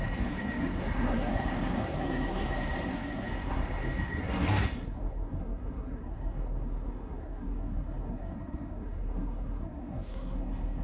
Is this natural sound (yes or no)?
no